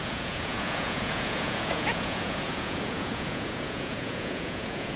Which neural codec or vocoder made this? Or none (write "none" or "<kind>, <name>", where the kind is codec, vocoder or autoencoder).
vocoder, Vocos